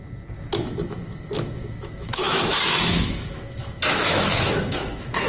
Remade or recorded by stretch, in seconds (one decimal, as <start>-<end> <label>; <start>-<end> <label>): 0.0-0.5 recorded; 0.5-2.5 remade; 2.5-2.9 recorded; 2.9-5.3 remade